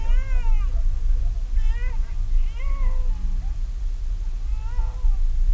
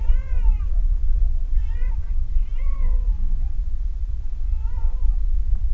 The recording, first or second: first